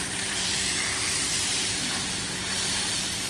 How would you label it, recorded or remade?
remade